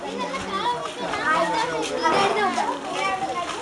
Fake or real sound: real